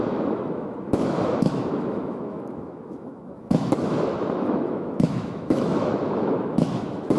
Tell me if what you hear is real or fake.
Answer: fake